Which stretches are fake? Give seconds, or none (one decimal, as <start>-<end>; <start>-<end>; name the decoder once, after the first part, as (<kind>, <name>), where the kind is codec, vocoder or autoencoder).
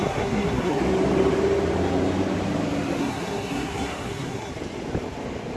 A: 0.0-0.8 (codec, SNAC); 3.0-4.5